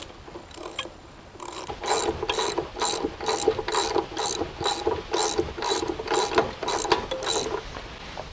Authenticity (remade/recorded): recorded